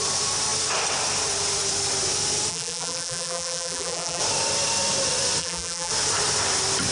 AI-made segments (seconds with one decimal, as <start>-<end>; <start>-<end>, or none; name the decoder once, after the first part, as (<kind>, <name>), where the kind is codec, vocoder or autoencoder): 2.5-4.2 (vocoder, BigVGAN v2); 5.4-5.9